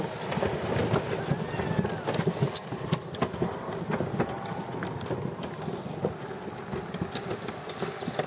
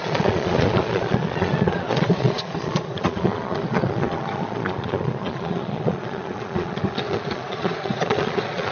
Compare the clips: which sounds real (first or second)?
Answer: first